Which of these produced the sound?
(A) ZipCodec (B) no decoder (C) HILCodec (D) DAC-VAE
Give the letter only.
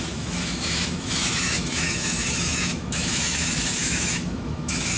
D